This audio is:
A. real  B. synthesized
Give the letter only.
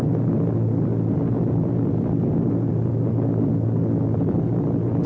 A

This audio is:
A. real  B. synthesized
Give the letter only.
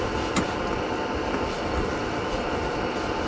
A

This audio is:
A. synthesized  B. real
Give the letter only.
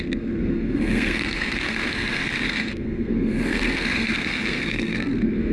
A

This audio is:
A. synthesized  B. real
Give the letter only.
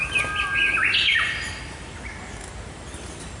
B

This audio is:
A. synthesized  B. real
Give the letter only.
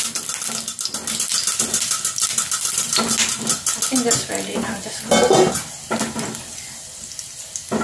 B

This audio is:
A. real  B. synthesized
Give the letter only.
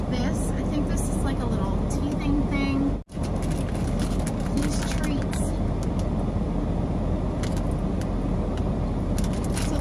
A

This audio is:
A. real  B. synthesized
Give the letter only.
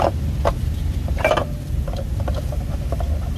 A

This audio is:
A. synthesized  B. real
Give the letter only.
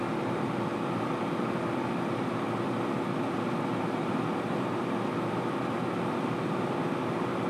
B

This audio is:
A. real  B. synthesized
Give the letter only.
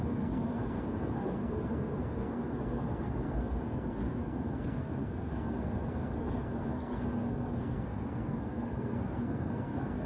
B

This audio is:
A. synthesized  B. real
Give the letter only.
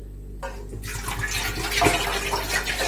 B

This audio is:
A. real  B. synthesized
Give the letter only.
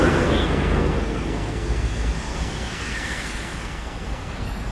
B